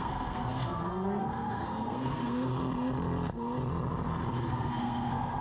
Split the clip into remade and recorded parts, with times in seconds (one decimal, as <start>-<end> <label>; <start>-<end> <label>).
0.0-2.5 remade; 2.5-4.5 recorded; 4.5-5.4 remade